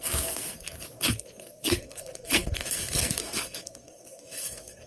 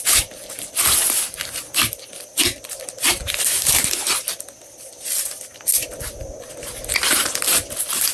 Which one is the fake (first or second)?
first